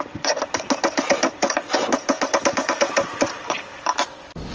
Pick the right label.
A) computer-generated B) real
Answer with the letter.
B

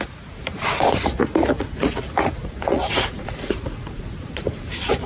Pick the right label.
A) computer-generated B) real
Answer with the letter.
A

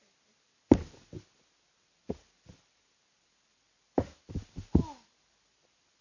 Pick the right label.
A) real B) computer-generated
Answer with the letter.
A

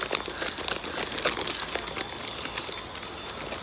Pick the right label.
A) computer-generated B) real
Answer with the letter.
B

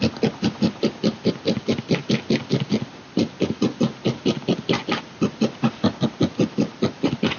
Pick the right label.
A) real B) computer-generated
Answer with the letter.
A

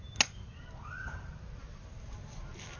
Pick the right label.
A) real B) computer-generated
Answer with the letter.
A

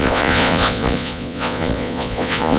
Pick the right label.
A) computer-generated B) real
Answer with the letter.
A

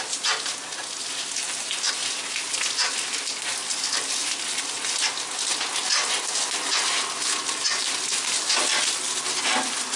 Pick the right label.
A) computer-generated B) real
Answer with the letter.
B